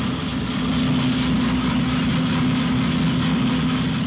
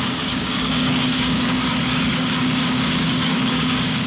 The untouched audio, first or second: first